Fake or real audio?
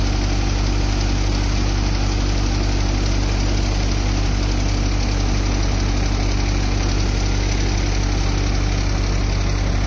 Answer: real